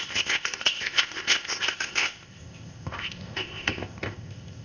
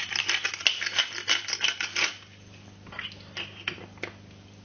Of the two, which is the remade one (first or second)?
first